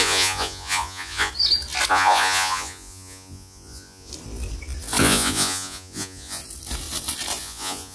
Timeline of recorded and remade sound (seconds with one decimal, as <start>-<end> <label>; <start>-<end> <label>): 0.0-1.3 remade; 1.3-1.9 recorded; 1.9-4.1 remade; 4.1-5.0 recorded; 5.0-6.4 remade; 6.4-7.4 recorded; 7.4-7.9 remade